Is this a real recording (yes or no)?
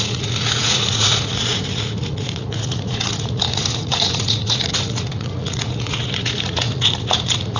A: no